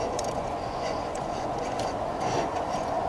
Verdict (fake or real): fake